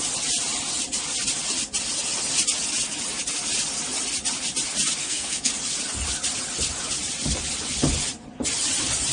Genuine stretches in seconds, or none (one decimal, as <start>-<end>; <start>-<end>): 0.0-5.0; 5.5-9.1